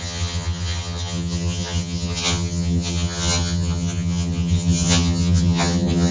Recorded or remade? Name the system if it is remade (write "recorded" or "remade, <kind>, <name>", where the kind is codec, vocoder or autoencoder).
remade, vocoder, HiFi-GAN